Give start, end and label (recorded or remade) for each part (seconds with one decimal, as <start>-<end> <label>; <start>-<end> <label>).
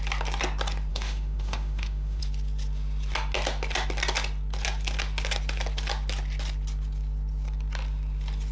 0.0-0.9 recorded; 0.9-2.2 remade; 2.2-8.5 recorded